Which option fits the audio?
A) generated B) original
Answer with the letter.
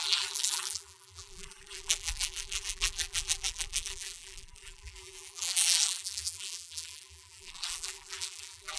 A